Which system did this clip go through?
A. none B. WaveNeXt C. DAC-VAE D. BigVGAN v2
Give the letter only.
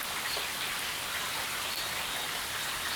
A